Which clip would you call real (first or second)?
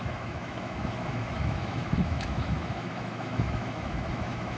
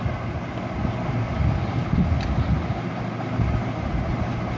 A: second